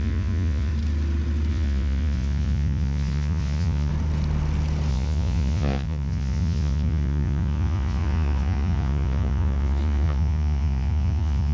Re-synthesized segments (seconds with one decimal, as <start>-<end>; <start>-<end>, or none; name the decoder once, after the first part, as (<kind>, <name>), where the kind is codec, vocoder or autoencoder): 0.0-0.7 (vocoder, Vocos); 1.5-3.9; 4.9-11.5